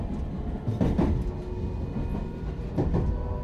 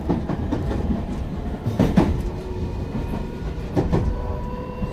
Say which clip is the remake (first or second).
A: second